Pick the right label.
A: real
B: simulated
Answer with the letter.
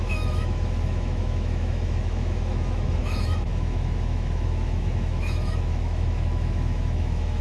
B